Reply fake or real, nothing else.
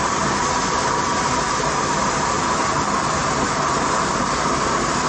real